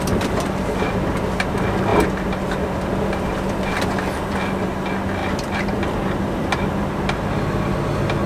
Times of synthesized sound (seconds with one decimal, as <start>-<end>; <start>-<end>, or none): 5.2-6.7